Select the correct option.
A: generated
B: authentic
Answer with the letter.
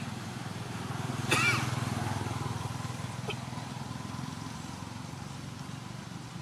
B